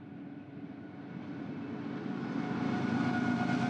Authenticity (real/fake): real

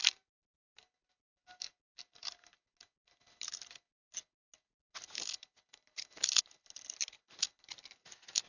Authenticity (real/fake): real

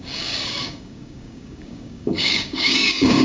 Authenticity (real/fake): fake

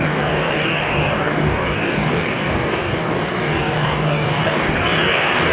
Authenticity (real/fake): fake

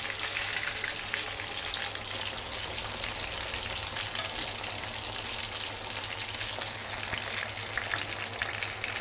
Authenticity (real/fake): real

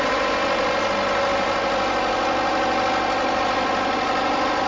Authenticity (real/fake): real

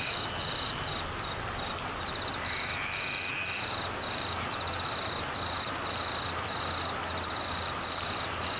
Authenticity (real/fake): real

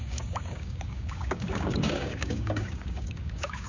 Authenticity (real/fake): fake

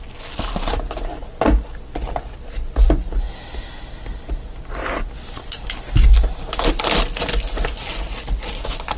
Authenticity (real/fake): real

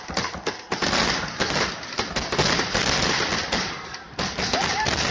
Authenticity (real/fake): real